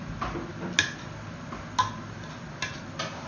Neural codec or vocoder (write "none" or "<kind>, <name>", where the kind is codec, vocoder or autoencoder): none